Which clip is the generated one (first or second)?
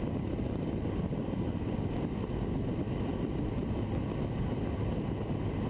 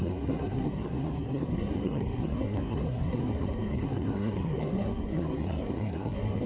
second